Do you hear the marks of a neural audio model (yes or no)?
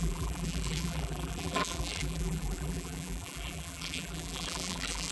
yes